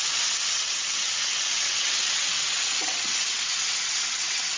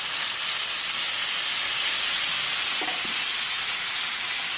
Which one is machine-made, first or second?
first